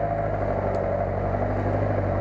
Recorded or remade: recorded